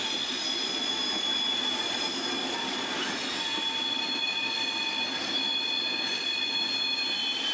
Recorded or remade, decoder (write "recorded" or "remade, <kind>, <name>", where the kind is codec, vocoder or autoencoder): recorded